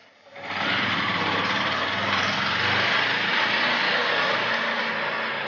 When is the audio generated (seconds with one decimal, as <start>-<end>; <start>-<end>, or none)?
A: none